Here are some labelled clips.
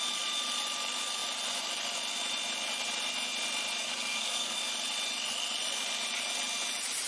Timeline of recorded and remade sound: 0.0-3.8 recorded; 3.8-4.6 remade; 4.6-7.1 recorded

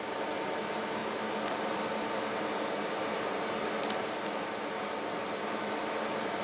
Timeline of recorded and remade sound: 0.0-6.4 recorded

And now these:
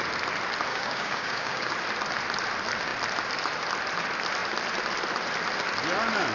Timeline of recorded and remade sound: 0.0-0.7 recorded; 0.7-1.7 remade; 1.7-6.3 recorded

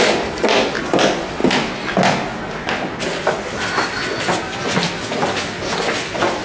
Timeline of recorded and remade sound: 0.0-6.4 recorded

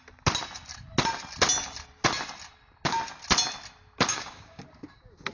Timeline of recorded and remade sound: 0.0-4.1 recorded; 4.1-4.6 remade; 4.6-5.3 recorded

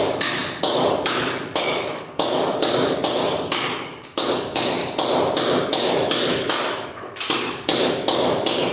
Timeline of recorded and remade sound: 0.0-4.8 remade; 4.8-5.6 recorded; 5.6-8.7 remade